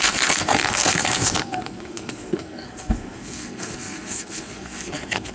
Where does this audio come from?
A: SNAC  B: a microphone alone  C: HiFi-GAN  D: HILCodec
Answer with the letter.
A